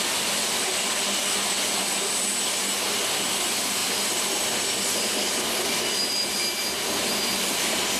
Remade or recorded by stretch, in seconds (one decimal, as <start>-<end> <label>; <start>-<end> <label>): 0.0-8.0 recorded